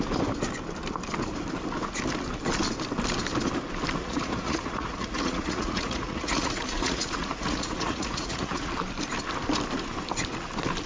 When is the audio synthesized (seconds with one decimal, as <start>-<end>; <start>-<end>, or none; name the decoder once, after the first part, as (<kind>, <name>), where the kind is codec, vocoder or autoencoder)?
4.0-8.7 (vocoder, Vocos)